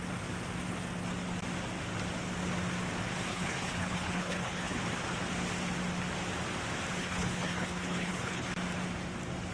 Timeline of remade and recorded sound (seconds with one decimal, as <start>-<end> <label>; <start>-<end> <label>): 0.0-3.3 recorded; 3.3-4.8 remade; 4.8-7.0 recorded; 7.0-8.5 remade; 8.5-9.5 recorded